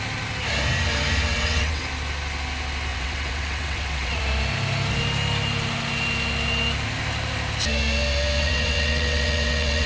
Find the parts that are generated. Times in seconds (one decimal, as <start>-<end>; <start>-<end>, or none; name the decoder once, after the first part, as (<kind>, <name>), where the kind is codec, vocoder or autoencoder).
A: 1.3-1.8 (vocoder, WaveNeXt); 2.9-4.2; 8.4-9.9